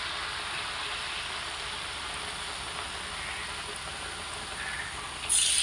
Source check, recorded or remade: recorded